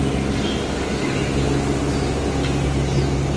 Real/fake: real